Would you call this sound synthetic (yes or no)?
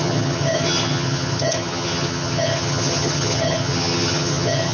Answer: yes